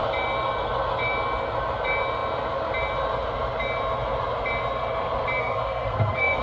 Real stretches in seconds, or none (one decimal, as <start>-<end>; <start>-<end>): 0.0-5.4